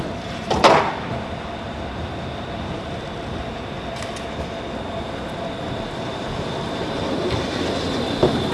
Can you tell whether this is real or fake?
real